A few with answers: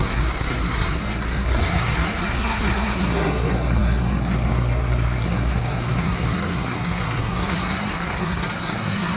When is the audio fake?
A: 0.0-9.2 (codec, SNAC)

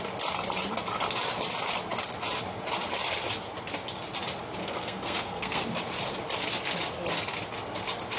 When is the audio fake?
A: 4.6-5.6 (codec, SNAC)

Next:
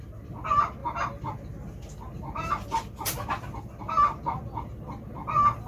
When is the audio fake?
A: none